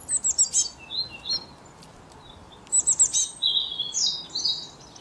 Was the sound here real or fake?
real